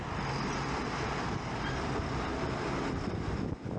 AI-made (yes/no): yes